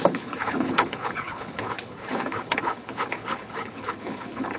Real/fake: fake